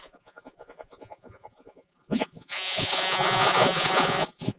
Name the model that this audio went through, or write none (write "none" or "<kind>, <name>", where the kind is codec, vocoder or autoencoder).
vocoder, Vocos